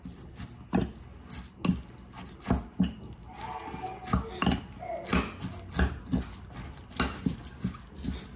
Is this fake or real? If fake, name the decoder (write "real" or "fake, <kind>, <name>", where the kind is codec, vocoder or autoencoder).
real